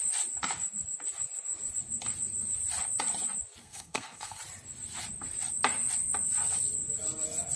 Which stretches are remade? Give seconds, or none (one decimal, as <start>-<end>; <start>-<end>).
3.6-4.4